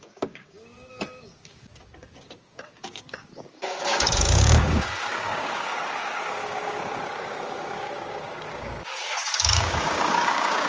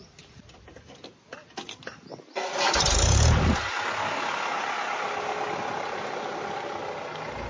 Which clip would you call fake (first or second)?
first